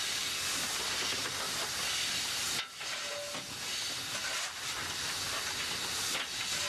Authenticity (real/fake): real